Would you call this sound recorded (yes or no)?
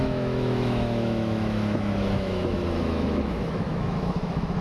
no